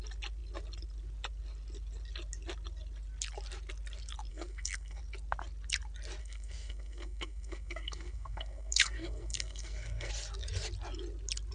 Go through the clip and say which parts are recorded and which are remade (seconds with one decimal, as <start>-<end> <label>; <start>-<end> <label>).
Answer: 0.0-4.3 recorded; 4.3-5.0 remade; 5.0-6.2 recorded; 6.2-10.1 remade; 10.1-11.5 recorded